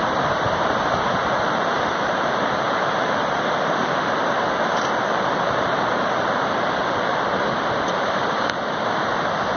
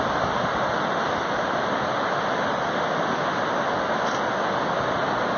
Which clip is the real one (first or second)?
second